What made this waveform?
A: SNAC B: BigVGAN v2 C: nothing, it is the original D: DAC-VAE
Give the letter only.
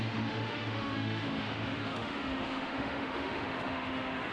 D